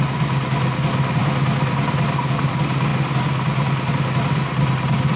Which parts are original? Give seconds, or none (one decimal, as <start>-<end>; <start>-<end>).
0.0-5.2